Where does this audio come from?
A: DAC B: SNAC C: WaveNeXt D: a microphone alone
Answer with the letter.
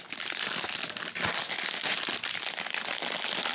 D